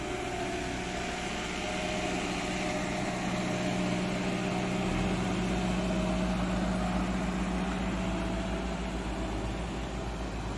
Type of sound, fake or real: real